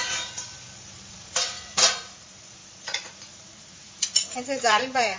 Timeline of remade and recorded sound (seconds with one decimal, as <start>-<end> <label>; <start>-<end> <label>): 0.0-0.5 remade; 0.5-1.1 recorded; 1.1-5.2 remade